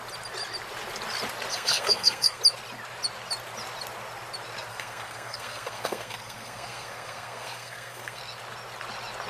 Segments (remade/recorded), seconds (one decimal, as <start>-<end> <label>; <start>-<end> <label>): 0.0-1.5 recorded; 1.5-2.4 remade; 2.4-4.7 recorded; 4.7-8.2 remade; 8.2-9.3 recorded